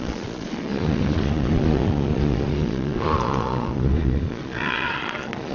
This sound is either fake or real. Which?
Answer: fake